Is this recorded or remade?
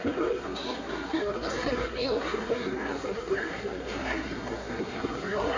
remade